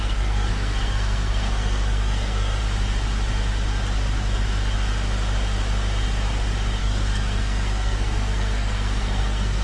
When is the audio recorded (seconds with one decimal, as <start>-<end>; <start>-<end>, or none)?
2.6-6.8